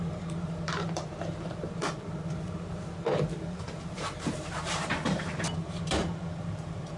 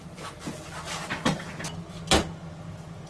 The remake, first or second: first